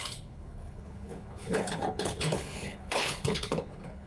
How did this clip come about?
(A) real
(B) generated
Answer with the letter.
B